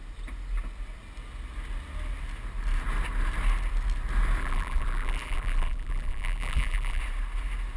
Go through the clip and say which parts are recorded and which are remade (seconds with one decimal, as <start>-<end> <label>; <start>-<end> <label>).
0.0-4.4 recorded; 4.4-7.0 remade; 7.0-7.8 recorded